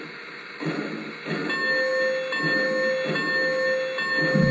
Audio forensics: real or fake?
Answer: real